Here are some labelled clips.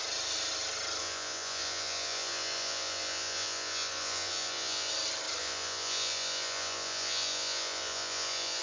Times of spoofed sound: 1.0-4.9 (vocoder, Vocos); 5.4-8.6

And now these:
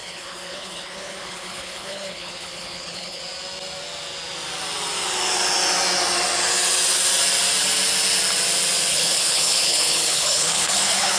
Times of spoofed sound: 0.0-3.2 (codec, HILCodec); 8.9-11.2

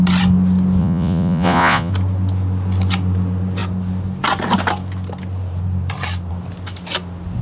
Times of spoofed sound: 0.8-1.9 (vocoder, Vocos)

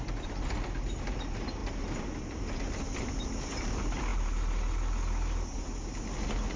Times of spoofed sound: none

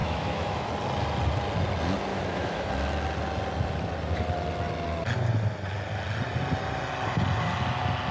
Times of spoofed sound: 0.0-0.7 (autoencoder, DAC-VAE); 2.1-2.7